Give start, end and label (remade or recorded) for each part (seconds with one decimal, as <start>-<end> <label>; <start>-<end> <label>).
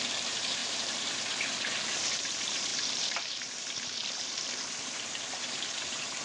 0.0-4.0 remade; 4.0-4.6 recorded; 4.6-6.2 remade